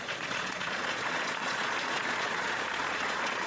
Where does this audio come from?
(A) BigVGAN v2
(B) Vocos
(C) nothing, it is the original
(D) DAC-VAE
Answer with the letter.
B